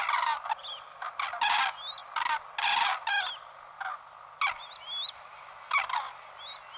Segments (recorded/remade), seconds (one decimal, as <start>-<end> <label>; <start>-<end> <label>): 0.0-6.8 recorded